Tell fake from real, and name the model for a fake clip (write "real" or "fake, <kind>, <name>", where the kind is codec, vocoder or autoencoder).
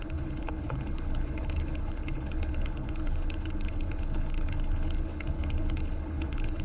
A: fake, codec, HILCodec